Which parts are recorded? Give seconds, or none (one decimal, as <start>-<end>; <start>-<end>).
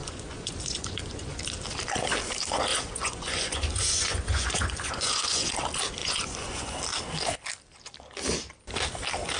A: 1.4-2.7; 5.5-6.0; 6.8-9.4